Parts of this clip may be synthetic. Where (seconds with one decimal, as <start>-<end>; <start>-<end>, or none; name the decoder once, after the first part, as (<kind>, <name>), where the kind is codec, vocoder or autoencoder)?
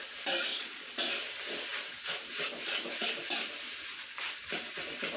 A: 0.5-1.1 (vocoder, Vocos)